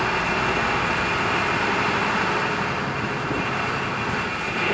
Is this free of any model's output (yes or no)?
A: yes